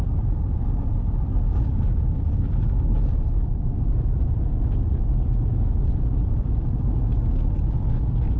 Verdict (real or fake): real